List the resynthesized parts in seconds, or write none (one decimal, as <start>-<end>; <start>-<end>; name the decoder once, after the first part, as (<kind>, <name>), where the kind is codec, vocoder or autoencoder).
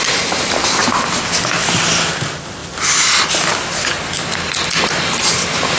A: none